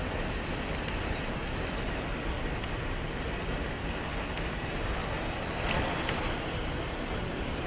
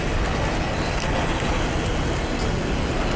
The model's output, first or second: first